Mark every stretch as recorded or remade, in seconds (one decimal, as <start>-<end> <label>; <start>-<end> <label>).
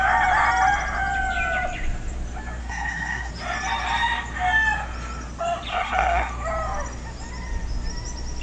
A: 0.0-2.6 recorded; 2.6-3.3 remade; 3.3-5.7 recorded; 5.7-6.3 remade; 6.3-8.4 recorded